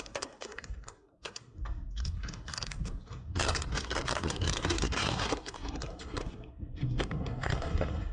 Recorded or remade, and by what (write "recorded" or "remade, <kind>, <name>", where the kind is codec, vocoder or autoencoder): remade, codec, SNAC